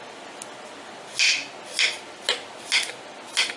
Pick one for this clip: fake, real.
real